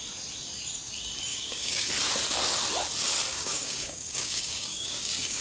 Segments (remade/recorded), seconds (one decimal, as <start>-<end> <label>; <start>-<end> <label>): 0.0-1.3 recorded; 1.3-1.9 remade; 1.9-3.3 recorded; 3.3-5.4 remade